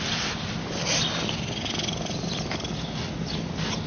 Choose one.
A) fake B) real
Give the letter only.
B